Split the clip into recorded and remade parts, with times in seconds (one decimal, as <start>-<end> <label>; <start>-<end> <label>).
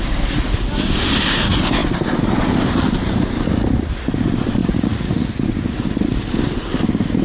0.0-4.6 recorded; 4.6-5.3 remade; 5.3-7.2 recorded